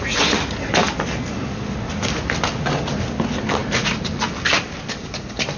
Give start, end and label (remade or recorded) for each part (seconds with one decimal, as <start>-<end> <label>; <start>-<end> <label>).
0.0-5.6 recorded